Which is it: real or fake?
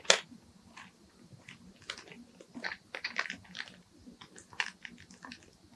real